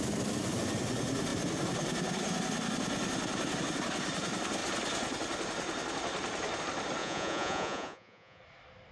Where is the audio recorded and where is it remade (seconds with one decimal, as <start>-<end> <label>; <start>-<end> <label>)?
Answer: 0.0-7.0 recorded; 7.0-8.4 remade; 8.4-8.9 recorded